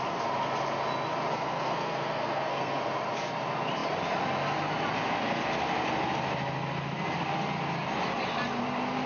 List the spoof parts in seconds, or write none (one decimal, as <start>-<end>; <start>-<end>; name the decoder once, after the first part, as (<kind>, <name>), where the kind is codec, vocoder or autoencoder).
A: 1.3-2.8 (codec, SNAC)